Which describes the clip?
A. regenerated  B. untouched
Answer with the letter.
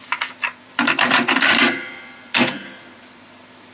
A